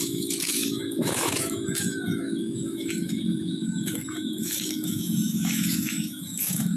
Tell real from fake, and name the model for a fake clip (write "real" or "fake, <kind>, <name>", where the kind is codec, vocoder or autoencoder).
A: fake, autoencoder, DAC-VAE